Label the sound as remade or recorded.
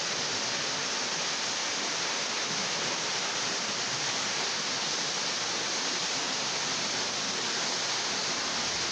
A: recorded